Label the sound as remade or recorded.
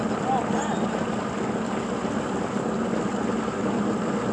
recorded